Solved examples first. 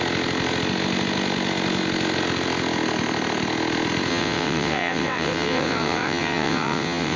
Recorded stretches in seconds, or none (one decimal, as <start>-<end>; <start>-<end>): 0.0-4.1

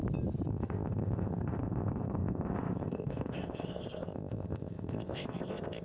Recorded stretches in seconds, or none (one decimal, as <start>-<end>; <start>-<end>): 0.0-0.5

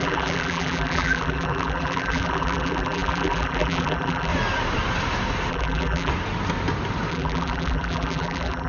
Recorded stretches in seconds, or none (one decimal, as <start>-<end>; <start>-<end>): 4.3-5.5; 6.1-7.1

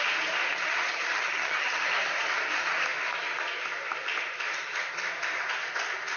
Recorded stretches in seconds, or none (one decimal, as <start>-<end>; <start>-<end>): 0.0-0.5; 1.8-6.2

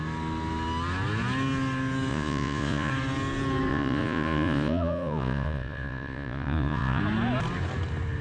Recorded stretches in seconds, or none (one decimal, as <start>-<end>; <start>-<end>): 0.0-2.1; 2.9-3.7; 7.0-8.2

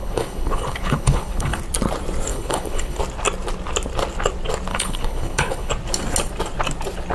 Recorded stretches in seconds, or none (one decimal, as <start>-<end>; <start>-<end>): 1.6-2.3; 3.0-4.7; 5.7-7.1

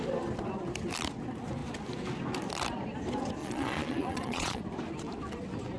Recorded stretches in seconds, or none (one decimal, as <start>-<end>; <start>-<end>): 0.0-3.4; 4.6-5.8